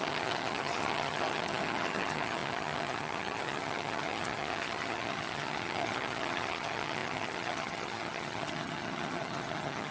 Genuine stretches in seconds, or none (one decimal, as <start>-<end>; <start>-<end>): none